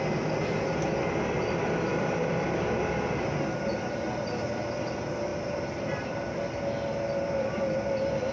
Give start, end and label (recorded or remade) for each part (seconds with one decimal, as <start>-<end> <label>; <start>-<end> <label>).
0.0-1.9 recorded; 1.9-2.6 remade; 2.6-5.3 recorded; 5.3-6.3 remade; 6.3-8.3 recorded